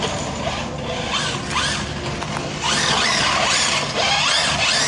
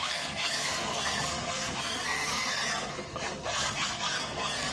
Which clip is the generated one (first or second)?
second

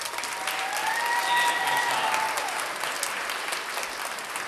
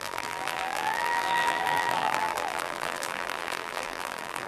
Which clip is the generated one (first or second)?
second